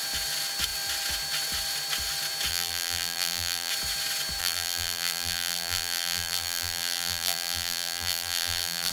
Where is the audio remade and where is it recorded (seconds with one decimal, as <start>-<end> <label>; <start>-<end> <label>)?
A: 0.0-2.5 recorded; 2.5-3.7 remade; 3.7-4.4 recorded; 4.4-8.9 remade